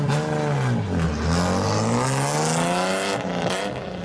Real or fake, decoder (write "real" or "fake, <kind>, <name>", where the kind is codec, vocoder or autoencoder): real